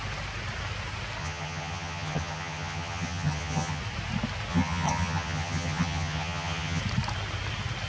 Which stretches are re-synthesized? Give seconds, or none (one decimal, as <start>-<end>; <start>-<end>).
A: 1.2-3.8; 4.5-6.8